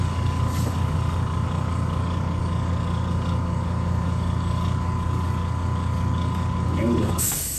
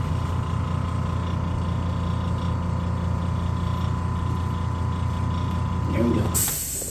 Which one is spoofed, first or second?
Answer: first